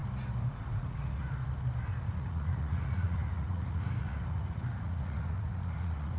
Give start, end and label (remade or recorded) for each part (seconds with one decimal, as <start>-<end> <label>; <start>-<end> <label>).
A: 0.0-0.5 recorded; 0.5-1.2 remade; 1.2-1.9 recorded; 1.9-6.2 remade